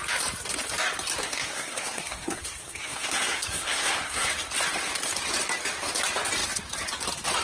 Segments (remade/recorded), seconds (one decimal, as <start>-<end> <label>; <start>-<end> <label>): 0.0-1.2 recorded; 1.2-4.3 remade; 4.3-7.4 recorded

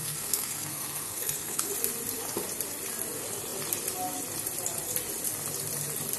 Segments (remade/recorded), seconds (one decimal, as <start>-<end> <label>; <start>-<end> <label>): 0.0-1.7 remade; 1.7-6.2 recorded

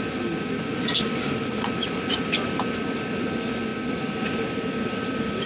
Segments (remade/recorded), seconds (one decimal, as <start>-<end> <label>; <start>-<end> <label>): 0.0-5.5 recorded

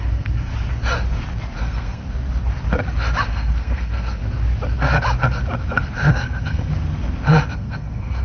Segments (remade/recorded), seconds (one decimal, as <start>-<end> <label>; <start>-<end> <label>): 0.0-0.5 remade; 0.5-1.6 recorded; 1.6-2.0 remade; 2.0-3.3 recorded; 3.3-4.2 remade; 4.2-6.1 recorded; 6.1-6.7 remade; 6.7-7.5 recorded; 7.5-8.2 remade

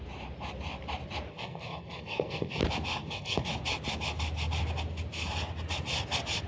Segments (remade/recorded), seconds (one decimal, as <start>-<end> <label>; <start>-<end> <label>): 0.0-1.3 recorded; 1.3-2.6 remade; 2.6-3.0 recorded; 3.0-3.5 remade; 3.5-6.5 recorded